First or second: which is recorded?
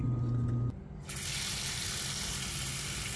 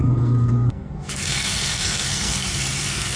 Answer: first